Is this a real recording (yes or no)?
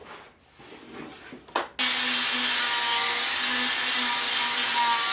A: yes